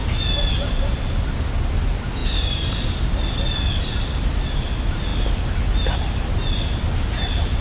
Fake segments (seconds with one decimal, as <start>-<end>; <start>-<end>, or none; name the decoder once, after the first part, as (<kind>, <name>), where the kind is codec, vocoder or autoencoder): 2.2-3.3 (vocoder, BigVGAN v2)

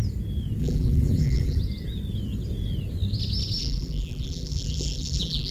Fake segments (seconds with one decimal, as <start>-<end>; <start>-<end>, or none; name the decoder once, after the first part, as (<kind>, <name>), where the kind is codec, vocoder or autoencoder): 0.6-1.6 (vocoder, BigVGAN v2); 3.6-5.5

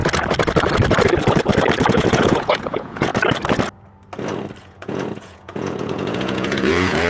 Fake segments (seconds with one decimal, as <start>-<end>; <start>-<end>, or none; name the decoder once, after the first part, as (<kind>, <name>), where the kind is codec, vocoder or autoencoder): 1.9-3.1 (vocoder, Vocos); 4.6-7.1